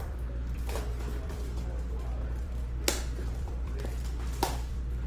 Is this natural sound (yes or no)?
no